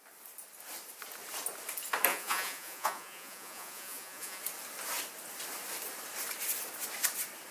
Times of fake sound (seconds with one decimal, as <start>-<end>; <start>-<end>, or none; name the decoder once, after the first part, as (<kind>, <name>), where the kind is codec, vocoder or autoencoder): 2.1-4.4 (vocoder, Vocos)